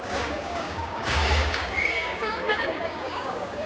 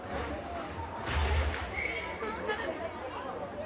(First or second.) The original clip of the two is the second